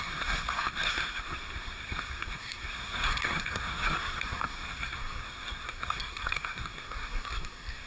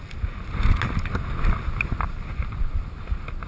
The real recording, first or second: second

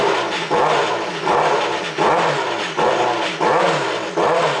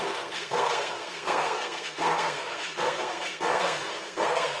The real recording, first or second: first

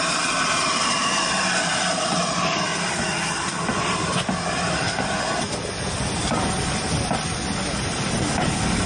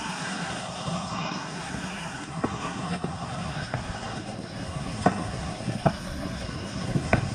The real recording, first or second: first